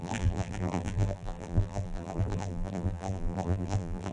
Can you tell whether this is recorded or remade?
remade